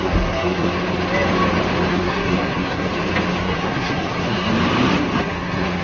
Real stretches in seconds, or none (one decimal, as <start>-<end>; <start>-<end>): 0.7-1.9; 2.9-3.4; 4.5-5.2